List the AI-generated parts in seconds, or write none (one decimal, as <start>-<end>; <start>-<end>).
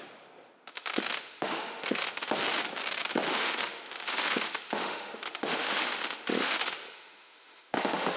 0.7-2.3; 3.3-8.2